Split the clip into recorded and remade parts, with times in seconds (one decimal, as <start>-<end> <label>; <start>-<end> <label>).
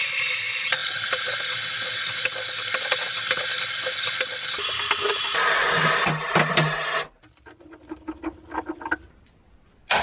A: 0.0-10.0 recorded